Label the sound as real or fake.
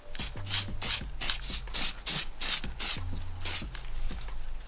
real